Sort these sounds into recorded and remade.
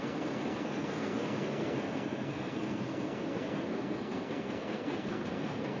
remade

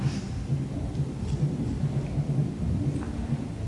recorded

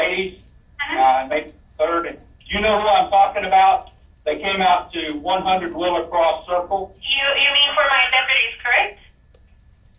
recorded